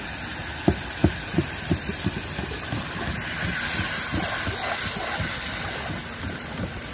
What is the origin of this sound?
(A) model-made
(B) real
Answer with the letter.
B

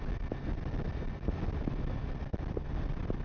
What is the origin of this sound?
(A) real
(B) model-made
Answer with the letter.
A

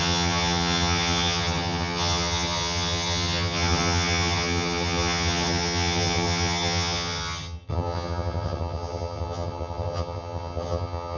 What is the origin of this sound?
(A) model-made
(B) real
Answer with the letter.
A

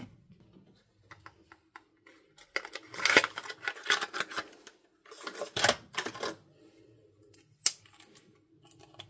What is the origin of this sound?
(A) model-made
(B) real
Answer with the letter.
B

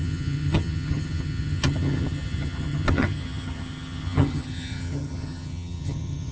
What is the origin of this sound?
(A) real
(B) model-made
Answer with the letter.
B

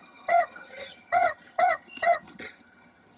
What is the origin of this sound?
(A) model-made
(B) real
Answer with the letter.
A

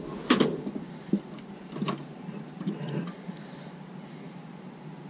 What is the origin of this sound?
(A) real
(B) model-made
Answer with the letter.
A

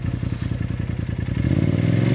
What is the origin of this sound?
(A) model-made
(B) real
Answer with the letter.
B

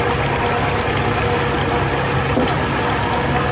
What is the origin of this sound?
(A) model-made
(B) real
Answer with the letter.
B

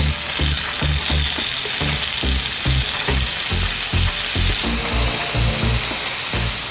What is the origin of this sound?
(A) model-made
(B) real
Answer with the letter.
B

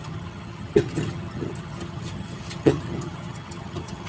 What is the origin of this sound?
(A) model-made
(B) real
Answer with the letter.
A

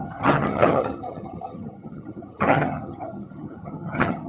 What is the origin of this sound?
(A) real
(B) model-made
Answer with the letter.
B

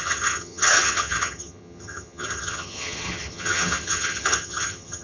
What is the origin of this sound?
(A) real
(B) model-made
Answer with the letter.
B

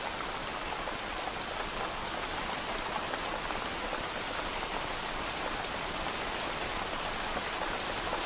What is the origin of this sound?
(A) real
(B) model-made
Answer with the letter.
A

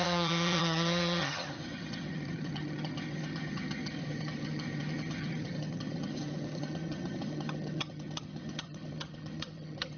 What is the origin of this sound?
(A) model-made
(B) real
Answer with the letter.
A